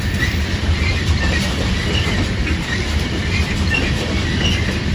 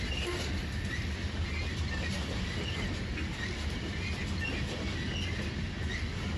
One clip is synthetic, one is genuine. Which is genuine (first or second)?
second